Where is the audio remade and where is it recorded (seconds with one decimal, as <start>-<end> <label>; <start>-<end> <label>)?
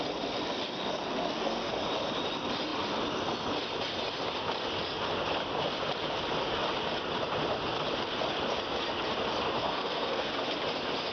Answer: 0.0-1.0 recorded; 1.0-1.7 remade; 1.7-9.6 recorded; 9.6-10.3 remade; 10.3-11.1 recorded